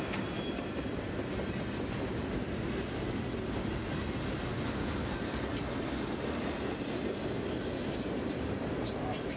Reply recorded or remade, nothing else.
recorded